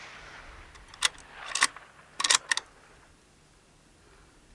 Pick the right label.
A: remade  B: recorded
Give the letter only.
B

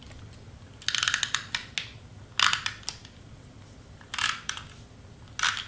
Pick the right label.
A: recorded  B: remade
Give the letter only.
A